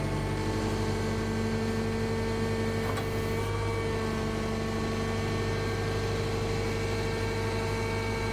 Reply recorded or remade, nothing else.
recorded